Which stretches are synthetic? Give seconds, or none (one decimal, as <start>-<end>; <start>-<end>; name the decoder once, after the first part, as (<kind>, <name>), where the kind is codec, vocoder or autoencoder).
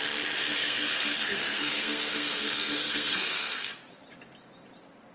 0.6-3.7 (codec, SNAC)